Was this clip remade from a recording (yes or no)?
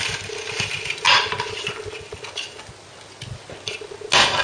no